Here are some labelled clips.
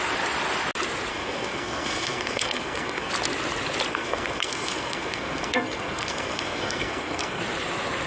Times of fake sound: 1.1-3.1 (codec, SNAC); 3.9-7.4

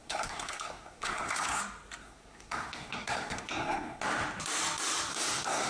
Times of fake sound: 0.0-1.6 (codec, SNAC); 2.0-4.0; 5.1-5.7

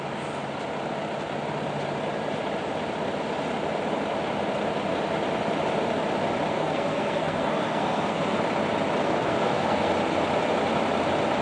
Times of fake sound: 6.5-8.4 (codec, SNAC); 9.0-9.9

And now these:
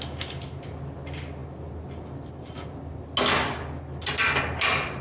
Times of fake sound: none

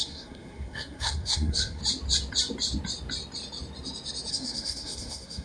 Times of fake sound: 0.0-1.8 (codec, SNAC); 4.3-5.4

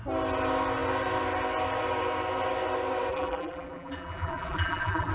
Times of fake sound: 3.1-5.1 (vocoder, BigVGAN v2)